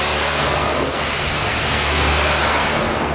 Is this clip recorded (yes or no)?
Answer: no